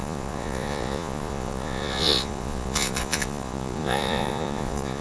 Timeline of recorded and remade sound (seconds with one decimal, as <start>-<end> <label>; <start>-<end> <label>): 0.0-5.0 remade